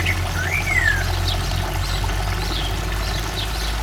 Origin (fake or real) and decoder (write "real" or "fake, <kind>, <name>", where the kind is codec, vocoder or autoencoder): real